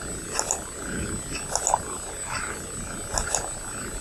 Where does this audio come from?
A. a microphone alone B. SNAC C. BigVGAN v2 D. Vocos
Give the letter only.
A